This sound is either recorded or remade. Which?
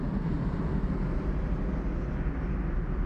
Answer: recorded